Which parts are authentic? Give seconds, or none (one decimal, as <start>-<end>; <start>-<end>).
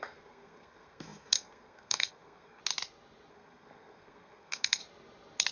2.6-3.3; 4.8-5.5